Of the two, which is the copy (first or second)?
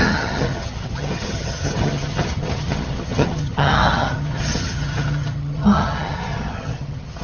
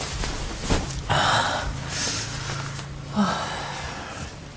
first